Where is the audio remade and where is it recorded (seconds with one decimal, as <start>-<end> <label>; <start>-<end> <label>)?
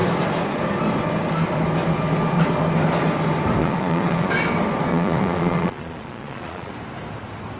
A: 0.0-3.6 recorded; 3.6-4.3 remade; 4.3-4.9 recorded; 4.9-6.7 remade; 6.7-7.6 recorded